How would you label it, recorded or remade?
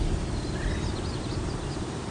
recorded